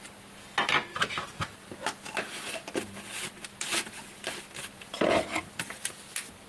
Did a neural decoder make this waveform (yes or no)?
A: no